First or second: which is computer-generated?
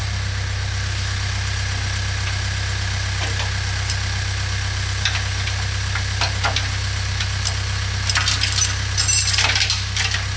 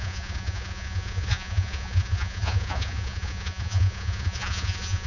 second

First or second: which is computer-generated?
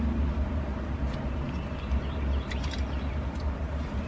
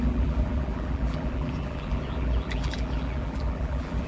second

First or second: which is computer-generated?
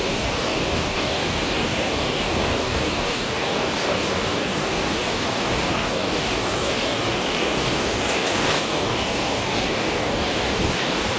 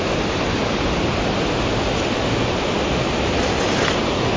first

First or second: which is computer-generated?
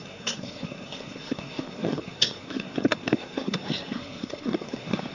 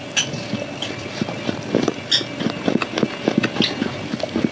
first